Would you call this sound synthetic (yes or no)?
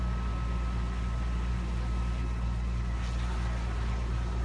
no